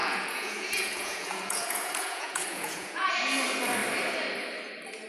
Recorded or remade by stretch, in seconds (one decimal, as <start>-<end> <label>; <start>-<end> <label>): 0.0-3.1 remade; 3.1-5.1 recorded